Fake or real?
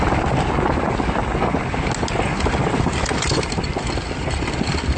real